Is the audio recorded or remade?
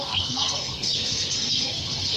remade